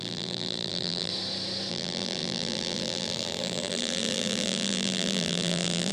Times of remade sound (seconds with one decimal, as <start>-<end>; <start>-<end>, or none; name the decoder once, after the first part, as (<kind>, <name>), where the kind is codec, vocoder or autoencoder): 0.0-1.1 (vocoder, BigVGAN v2); 1.7-5.9